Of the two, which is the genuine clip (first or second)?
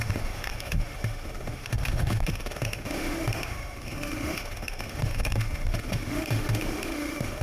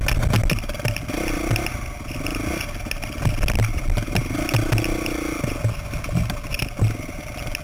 second